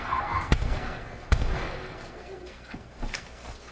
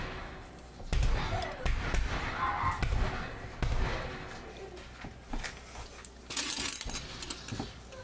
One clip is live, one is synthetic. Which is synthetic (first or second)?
first